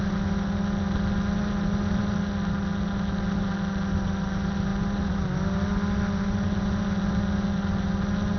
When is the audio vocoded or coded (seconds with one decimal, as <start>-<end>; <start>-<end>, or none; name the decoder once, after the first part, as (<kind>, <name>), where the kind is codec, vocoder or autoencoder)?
none